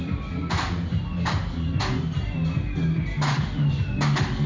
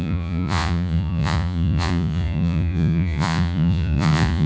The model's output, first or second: second